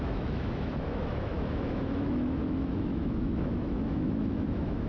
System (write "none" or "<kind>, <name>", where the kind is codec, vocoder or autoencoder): autoencoder, DAC-VAE